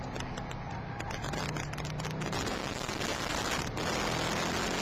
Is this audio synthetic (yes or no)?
no